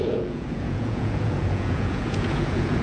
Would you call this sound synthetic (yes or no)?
yes